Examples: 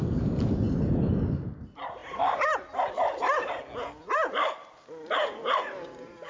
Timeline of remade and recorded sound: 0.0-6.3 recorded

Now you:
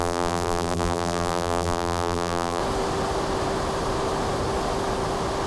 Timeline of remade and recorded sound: 0.0-2.6 remade; 2.6-5.5 recorded

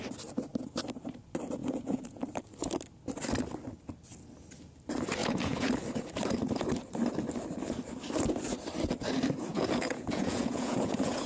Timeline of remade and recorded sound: 0.0-1.6 recorded; 1.6-2.2 remade; 2.2-5.2 recorded; 5.2-5.7 remade; 5.7-9.5 recorded; 9.5-11.3 remade

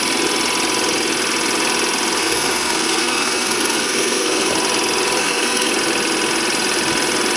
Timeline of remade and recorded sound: 0.0-2.2 recorded; 2.2-4.5 remade; 4.5-5.2 recorded; 5.2-5.7 remade; 5.7-7.4 recorded

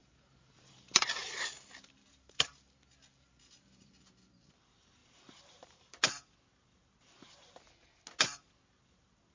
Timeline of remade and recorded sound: 0.0-3.9 remade; 3.9-5.0 recorded; 5.0-5.9 remade; 5.9-9.3 recorded